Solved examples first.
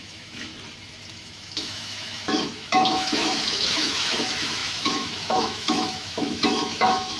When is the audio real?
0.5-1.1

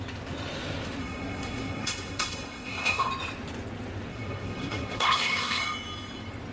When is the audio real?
0.0-1.0; 3.1-4.1; 5.6-6.5

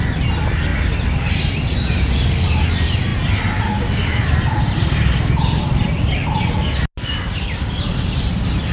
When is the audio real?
0.0-8.7